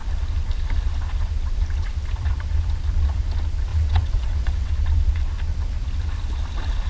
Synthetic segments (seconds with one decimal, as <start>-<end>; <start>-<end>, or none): 3.7-4.7